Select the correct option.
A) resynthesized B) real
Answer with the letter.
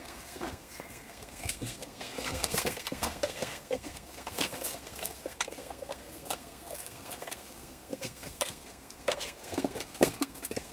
A